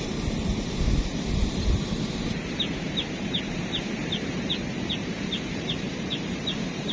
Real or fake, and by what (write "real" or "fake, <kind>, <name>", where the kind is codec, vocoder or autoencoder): fake, vocoder, BigVGAN v2